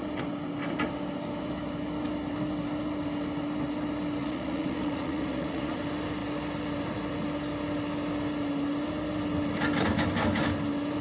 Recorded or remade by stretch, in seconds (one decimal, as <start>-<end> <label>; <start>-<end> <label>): 0.0-4.2 recorded; 4.2-5.8 remade; 5.8-11.0 recorded

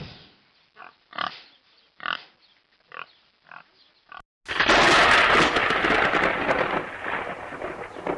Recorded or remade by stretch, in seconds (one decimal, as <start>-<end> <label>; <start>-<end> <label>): 0.0-8.2 recorded